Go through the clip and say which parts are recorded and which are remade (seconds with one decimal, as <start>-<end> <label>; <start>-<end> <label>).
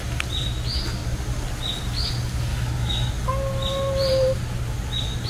0.0-2.5 recorded; 2.5-3.1 remade; 3.1-5.3 recorded